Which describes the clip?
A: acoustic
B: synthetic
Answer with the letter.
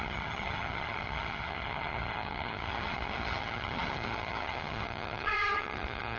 B